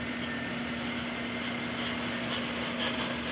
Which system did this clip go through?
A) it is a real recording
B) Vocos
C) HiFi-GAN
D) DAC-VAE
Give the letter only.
A